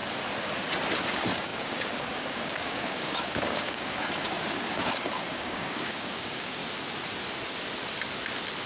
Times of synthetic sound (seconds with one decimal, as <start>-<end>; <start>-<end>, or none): 1.1-6.6